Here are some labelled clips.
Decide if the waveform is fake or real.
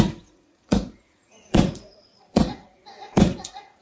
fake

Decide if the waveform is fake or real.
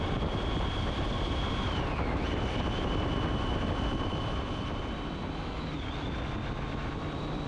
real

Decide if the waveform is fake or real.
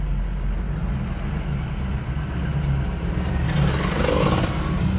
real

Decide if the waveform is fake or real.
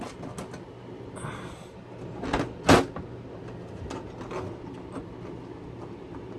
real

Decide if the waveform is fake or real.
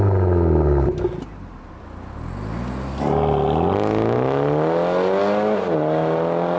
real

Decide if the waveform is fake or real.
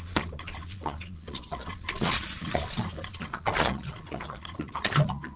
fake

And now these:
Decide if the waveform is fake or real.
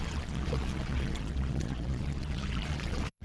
fake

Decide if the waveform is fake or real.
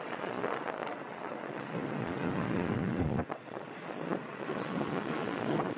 fake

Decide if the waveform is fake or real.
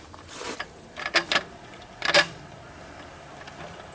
real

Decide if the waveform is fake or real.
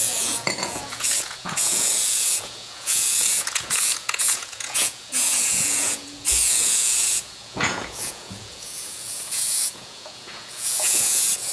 fake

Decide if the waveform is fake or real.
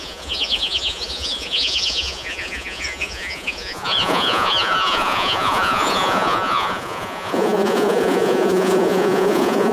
fake